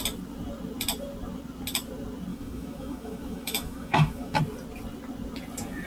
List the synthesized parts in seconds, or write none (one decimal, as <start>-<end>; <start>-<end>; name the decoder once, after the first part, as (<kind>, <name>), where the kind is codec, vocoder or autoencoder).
2.3-4.4 (autoencoder, DAC-VAE)